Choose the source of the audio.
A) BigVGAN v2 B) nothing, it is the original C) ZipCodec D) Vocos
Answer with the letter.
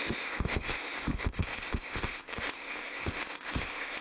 C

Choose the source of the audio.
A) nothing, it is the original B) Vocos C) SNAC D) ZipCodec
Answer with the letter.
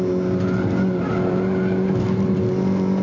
A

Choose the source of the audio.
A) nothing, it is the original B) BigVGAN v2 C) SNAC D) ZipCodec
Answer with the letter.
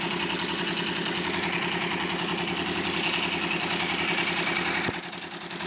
A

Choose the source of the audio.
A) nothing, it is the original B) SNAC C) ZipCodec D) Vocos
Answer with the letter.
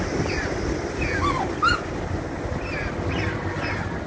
A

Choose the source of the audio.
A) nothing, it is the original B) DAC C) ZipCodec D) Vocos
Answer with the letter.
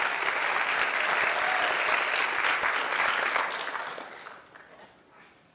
A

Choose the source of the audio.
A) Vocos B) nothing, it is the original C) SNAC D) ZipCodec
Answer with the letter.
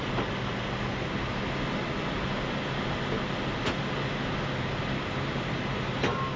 B